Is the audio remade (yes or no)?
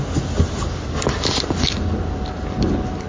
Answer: no